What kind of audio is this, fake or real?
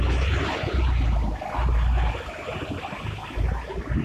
real